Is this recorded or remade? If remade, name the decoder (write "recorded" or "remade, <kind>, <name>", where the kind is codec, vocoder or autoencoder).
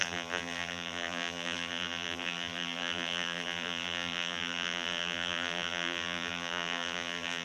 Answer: remade, vocoder, BigVGAN v2